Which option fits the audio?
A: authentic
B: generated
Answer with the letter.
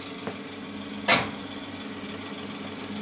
A